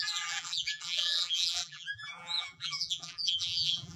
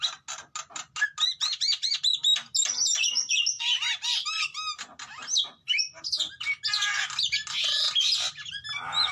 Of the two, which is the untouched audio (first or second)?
second